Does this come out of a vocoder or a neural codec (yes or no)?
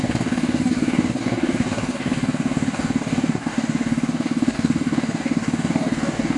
yes